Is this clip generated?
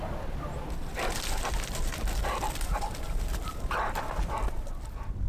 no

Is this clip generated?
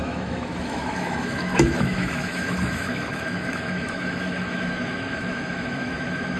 yes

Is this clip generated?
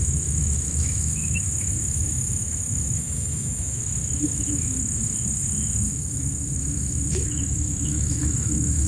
yes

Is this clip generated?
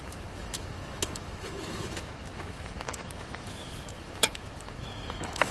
yes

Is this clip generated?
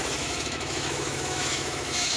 yes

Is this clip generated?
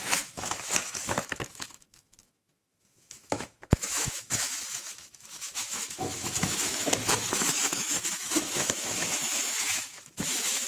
yes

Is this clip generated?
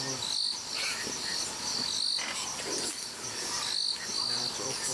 no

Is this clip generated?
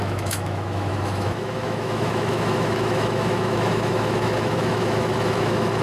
yes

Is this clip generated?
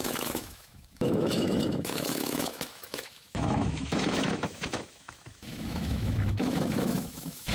yes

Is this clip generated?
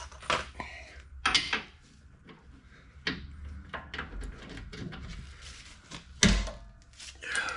no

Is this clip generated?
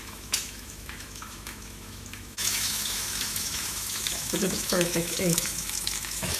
yes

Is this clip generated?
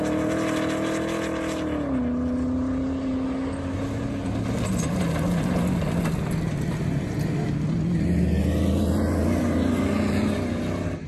no